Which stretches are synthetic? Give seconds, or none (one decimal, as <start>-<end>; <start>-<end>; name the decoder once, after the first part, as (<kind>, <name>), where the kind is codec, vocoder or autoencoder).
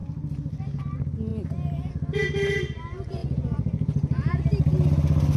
3.2-4.4 (vocoder, Vocos)